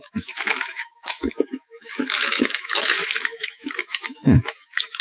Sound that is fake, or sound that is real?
fake